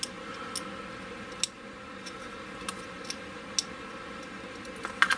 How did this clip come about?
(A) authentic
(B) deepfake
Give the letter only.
A